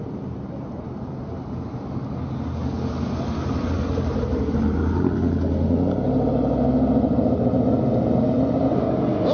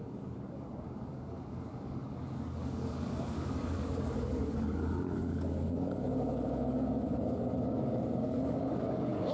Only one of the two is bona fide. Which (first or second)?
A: first